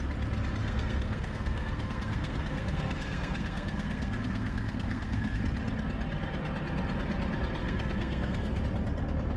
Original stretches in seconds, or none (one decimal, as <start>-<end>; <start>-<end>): 0.0-0.6; 5.4-7.6; 8.6-9.4